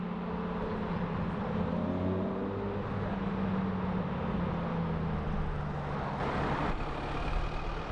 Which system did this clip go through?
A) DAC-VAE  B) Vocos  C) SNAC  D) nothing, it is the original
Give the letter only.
D